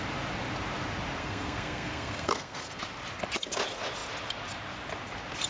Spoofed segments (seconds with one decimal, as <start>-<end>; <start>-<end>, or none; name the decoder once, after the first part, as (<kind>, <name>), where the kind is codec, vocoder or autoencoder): 1.2-2.8 (codec, SNAC)